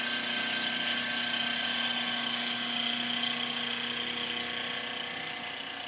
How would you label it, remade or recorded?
recorded